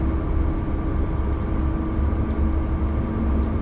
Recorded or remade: recorded